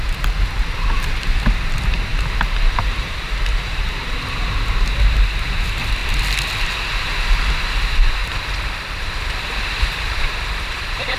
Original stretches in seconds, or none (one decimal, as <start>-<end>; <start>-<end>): 2.1-2.6; 6.0-7.6; 8.2-9.8